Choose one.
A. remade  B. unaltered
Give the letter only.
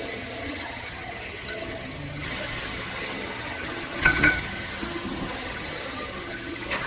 A